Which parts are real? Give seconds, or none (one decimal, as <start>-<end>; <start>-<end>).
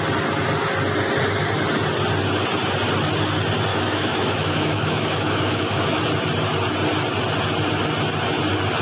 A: 0.0-3.7; 6.0-8.8